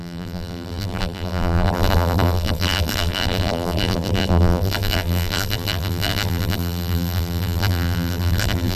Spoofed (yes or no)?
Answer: yes